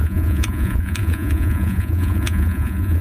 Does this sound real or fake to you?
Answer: fake